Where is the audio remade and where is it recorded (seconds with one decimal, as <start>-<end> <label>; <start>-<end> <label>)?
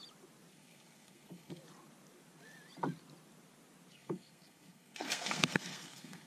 0.0-0.5 recorded; 0.5-1.6 remade; 1.6-3.9 recorded; 3.9-6.3 remade